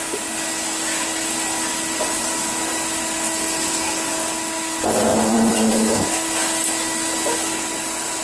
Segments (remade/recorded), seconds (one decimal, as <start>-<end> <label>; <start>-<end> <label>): 0.0-5.1 recorded; 5.1-5.7 remade; 5.7-8.2 recorded